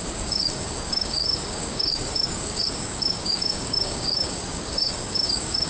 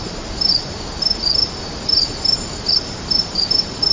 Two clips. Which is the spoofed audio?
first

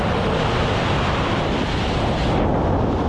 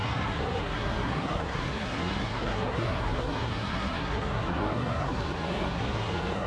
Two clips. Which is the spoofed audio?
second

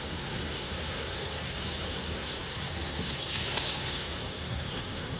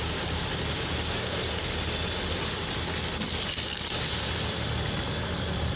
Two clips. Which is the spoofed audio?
first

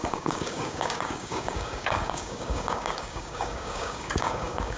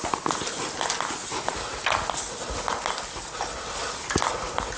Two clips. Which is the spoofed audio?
first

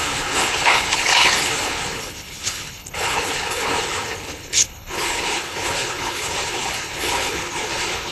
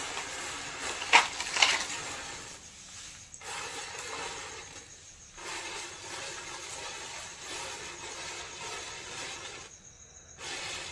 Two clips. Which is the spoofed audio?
first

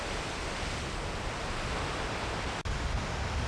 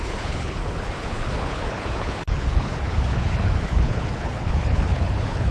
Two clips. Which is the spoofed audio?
second